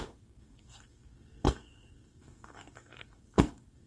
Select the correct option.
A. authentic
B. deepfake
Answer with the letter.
B